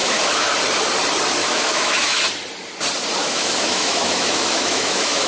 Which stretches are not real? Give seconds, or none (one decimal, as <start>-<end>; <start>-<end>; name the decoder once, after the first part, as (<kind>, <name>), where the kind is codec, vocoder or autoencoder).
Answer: 0.0-0.5 (autoencoder, DAC-VAE); 1.4-2.2; 3.2-5.3